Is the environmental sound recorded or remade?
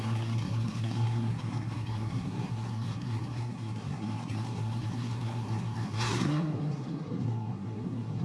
remade